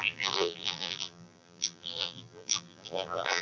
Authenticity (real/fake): fake